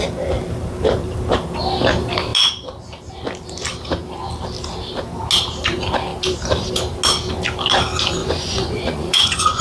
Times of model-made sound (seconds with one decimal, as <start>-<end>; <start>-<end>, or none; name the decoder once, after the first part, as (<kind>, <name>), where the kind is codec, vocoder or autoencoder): 8.2-9.6 (vocoder, Vocos)